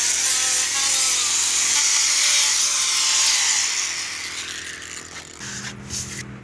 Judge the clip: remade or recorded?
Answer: recorded